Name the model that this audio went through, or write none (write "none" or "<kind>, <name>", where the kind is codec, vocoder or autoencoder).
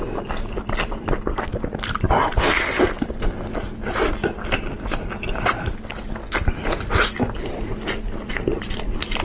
none